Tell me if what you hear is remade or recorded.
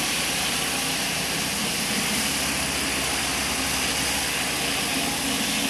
recorded